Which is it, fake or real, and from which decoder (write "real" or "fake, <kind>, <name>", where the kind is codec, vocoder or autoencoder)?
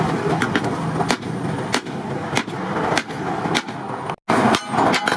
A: real